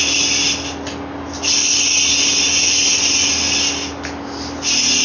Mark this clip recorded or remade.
recorded